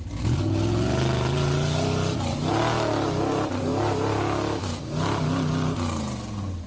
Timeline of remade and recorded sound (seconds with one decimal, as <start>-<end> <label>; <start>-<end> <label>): 0.0-6.7 recorded

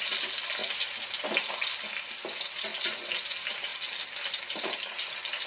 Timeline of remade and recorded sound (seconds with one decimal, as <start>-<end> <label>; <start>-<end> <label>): 0.0-5.5 recorded

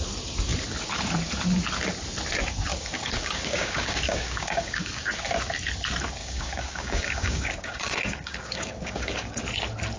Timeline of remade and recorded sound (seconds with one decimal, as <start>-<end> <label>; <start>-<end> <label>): 0.0-2.7 recorded; 2.7-5.1 remade; 5.1-6.2 recorded; 6.2-9.3 remade; 9.3-10.0 recorded

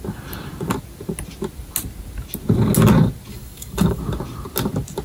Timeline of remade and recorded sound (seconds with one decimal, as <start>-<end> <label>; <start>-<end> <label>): 0.0-3.3 recorded; 3.3-4.0 remade; 4.0-5.0 recorded